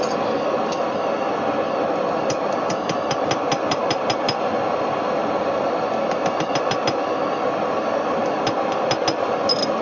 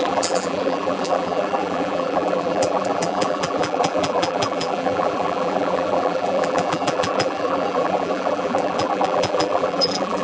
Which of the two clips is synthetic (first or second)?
second